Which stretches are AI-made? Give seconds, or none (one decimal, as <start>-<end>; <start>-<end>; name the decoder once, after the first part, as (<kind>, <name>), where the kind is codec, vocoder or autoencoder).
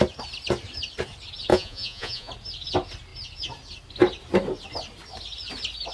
1.5-2.3 (vocoder, Vocos)